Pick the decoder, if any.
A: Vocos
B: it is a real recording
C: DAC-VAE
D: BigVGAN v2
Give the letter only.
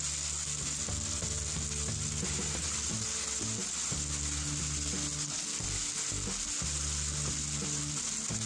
B